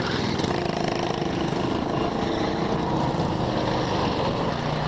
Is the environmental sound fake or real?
real